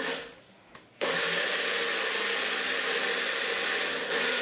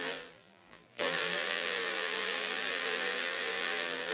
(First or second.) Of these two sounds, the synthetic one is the second